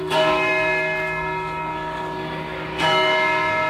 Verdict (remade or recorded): remade